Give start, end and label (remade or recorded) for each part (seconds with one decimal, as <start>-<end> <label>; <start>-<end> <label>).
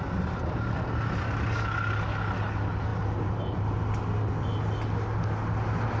0.0-6.0 recorded